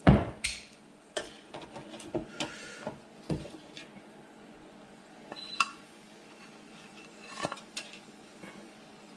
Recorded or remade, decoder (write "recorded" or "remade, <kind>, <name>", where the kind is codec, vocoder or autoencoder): remade, vocoder, Vocos